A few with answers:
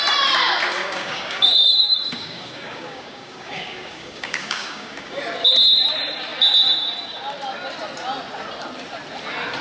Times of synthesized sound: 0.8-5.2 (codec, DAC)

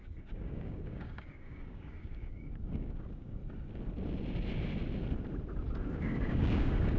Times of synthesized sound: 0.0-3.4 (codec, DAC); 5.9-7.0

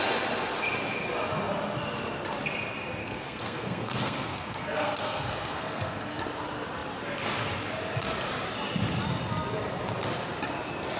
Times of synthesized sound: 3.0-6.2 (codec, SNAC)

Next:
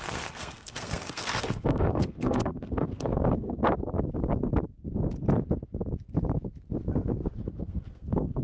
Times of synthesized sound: 0.0-3.6 (codec, SNAC); 7.6-8.4